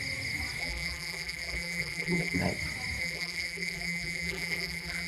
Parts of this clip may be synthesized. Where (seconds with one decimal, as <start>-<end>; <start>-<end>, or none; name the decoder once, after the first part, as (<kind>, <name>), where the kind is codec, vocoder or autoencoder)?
0.6-2.4 (vocoder, BigVGAN v2); 3.0-5.1